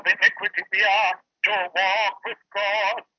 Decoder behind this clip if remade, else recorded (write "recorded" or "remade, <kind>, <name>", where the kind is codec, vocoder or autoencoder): recorded